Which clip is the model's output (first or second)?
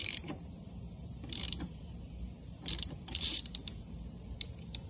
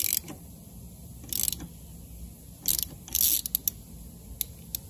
first